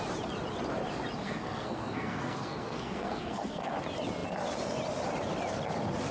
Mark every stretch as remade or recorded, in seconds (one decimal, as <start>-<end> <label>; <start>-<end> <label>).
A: 0.0-1.2 recorded; 1.2-3.7 remade; 3.7-6.1 recorded

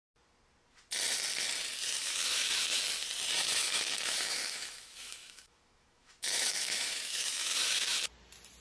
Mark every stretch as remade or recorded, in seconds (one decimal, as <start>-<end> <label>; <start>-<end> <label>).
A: 0.0-2.0 recorded; 2.0-2.8 remade; 2.8-3.4 recorded; 3.4-8.0 remade; 8.0-8.6 recorded